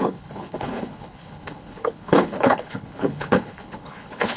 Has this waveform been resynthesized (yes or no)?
yes